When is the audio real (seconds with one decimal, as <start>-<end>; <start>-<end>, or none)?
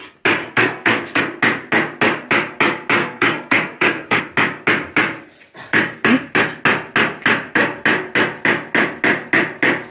0.0-0.4; 1.2-3.0; 4.2-9.9